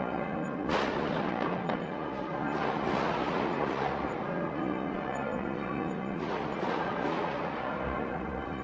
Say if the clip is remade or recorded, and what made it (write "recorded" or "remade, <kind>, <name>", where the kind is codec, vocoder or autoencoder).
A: remade, vocoder, Vocos